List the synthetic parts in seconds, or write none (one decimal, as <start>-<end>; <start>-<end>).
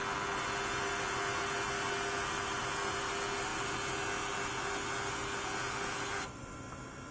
none